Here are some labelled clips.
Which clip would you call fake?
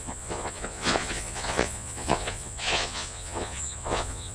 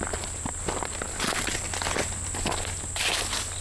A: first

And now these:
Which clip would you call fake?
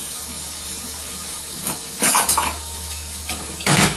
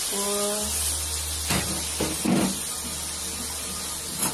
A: first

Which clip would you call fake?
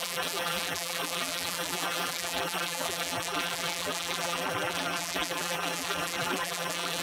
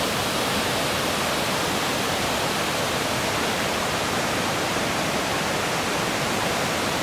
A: first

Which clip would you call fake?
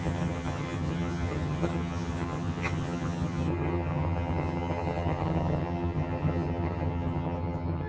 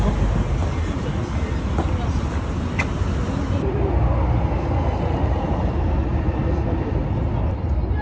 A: first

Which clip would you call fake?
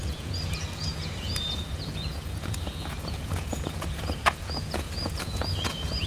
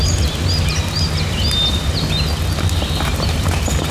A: first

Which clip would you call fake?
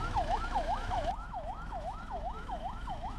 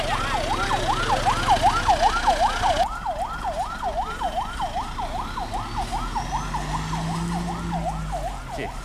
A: first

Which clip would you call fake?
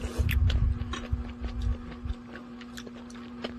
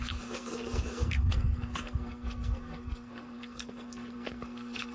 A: second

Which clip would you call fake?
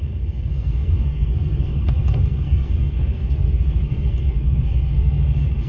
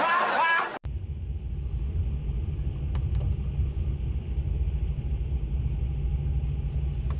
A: first